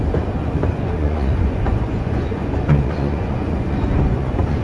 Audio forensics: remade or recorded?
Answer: remade